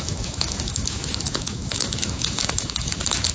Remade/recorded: remade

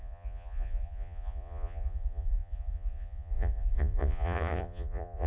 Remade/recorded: remade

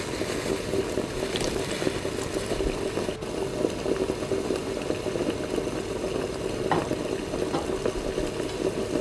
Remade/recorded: recorded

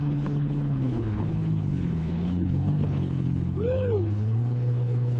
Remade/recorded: remade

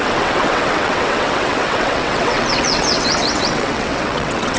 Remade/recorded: remade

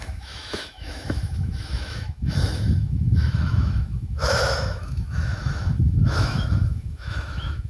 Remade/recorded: remade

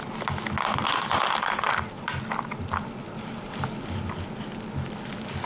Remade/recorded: recorded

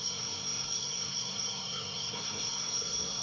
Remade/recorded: remade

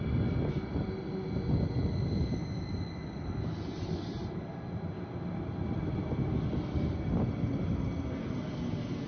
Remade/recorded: recorded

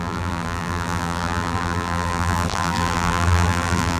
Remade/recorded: remade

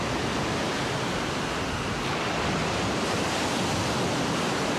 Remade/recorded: recorded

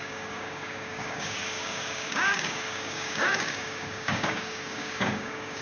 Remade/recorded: remade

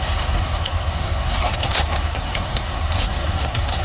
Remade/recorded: remade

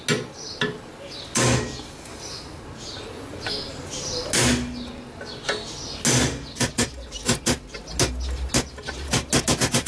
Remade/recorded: recorded